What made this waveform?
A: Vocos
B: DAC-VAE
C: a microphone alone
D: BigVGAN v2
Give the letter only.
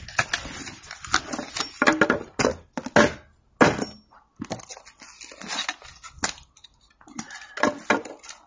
C